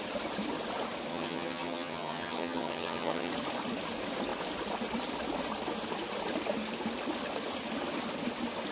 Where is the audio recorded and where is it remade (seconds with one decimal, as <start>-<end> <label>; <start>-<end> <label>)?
0.0-1.1 recorded; 1.1-3.3 remade; 3.3-8.7 recorded

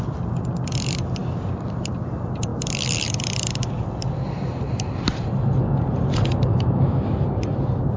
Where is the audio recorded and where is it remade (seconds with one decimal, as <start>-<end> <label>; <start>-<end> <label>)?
0.0-6.5 recorded; 6.5-7.1 remade; 7.1-8.0 recorded

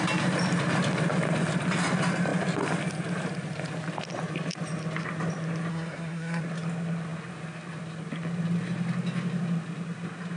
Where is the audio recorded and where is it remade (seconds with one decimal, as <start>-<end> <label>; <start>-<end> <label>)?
0.0-5.7 recorded; 5.7-6.4 remade; 6.4-10.4 recorded

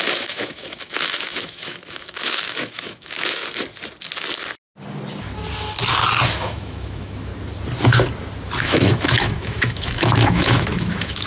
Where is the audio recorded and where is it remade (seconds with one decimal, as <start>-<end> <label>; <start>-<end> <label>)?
0.0-3.4 remade; 3.4-6.4 recorded; 6.4-7.3 remade; 7.3-8.6 recorded; 8.6-11.3 remade

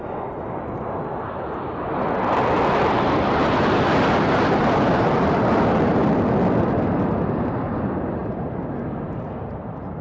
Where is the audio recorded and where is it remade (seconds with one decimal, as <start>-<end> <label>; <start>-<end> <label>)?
0.0-10.0 recorded

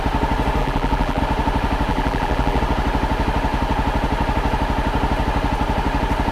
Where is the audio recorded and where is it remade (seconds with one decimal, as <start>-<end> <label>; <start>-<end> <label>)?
0.0-0.6 recorded; 0.6-1.2 remade; 1.2-1.9 recorded; 1.9-2.6 remade; 2.6-6.3 recorded

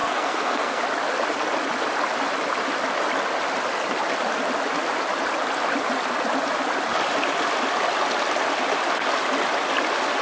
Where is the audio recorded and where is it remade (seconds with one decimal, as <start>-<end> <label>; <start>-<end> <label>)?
0.0-0.8 remade; 0.8-10.2 recorded